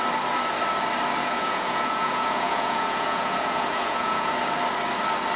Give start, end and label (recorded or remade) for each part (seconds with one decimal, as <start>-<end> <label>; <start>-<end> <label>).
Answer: 0.0-1.2 recorded; 1.2-4.4 remade; 4.4-5.4 recorded